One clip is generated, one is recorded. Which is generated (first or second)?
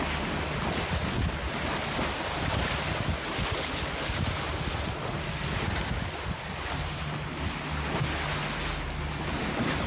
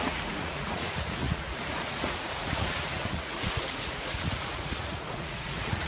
second